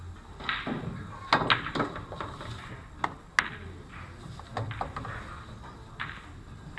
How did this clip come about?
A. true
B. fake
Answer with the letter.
A